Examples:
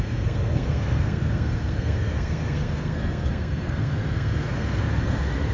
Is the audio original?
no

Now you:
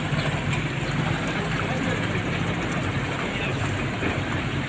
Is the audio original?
yes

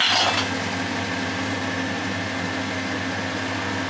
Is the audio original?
yes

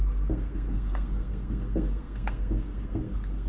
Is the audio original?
no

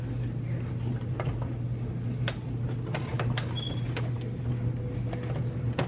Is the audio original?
yes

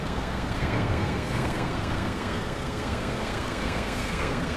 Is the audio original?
no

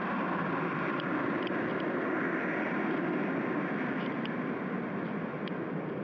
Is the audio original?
yes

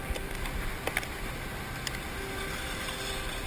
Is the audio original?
yes